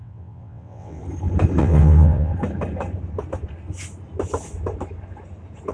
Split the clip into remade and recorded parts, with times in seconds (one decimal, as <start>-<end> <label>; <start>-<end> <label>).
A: 0.0-1.0 remade; 1.0-1.6 recorded; 1.6-2.3 remade; 2.3-5.7 recorded